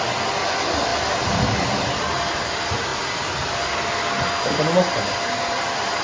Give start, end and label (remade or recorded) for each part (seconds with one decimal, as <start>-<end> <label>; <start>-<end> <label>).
0.0-6.0 recorded